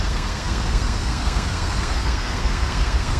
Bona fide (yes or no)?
no